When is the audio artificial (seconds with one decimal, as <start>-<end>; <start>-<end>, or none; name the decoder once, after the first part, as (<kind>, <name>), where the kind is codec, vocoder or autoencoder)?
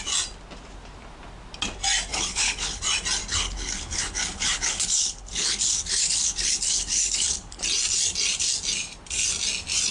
2.1-2.8 (codec, HILCodec); 3.3-7.6